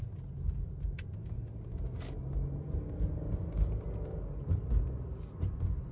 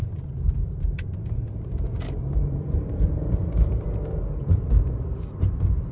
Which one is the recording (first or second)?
first